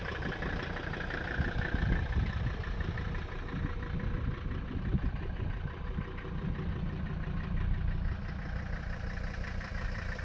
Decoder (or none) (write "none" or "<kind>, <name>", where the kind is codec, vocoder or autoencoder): vocoder, BigVGAN v2